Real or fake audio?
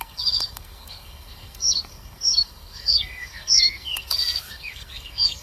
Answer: fake